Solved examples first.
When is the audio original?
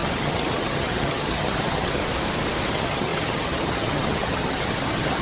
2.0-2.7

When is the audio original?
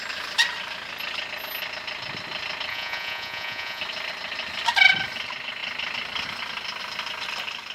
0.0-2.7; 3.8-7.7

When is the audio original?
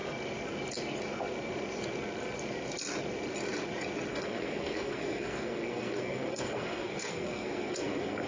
0.0-4.1